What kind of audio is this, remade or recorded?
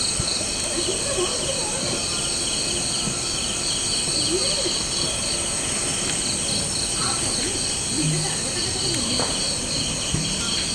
recorded